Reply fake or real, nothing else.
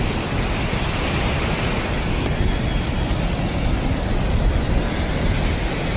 real